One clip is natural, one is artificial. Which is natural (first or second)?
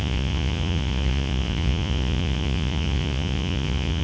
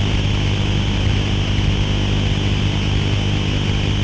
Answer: second